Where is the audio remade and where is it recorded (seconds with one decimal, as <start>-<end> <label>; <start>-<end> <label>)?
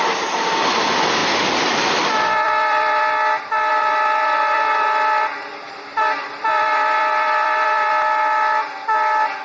0.0-1.2 recorded; 1.2-3.0 remade; 3.0-3.7 recorded; 3.7-7.9 remade; 7.9-9.4 recorded